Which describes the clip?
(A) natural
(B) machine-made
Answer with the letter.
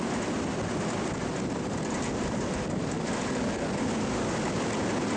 A